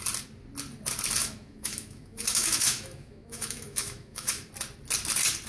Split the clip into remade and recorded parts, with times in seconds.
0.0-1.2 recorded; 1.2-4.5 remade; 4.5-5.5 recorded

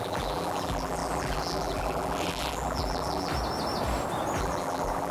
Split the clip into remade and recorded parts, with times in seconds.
0.0-3.3 remade; 3.3-4.4 recorded; 4.4-5.1 remade

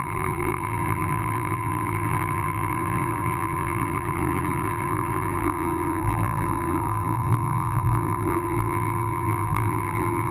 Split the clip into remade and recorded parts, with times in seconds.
0.0-10.3 remade

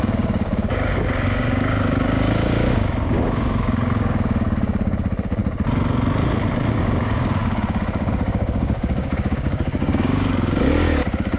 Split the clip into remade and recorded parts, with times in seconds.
0.0-5.4 remade; 5.4-6.7 recorded; 6.7-11.4 remade

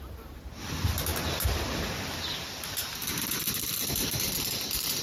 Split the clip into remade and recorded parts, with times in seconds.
0.0-5.0 remade